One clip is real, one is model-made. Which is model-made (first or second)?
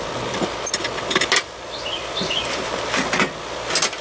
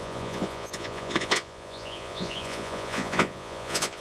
second